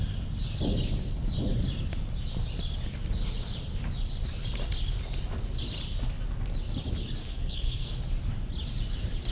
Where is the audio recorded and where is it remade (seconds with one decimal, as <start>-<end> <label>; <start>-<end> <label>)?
0.0-7.2 recorded; 7.2-7.9 remade; 7.9-9.3 recorded